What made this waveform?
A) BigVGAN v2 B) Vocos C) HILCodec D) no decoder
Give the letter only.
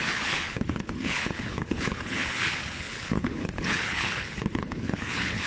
C